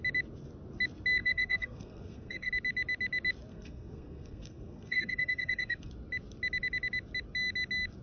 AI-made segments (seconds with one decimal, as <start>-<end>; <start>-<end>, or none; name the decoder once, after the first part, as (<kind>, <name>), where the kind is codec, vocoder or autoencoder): 1.2-2.5 (codec, SNAC); 3.5-5.9